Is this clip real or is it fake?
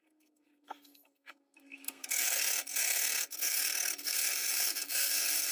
fake